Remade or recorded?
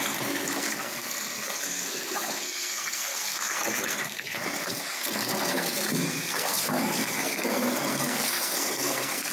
remade